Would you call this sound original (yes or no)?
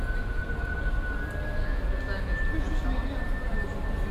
yes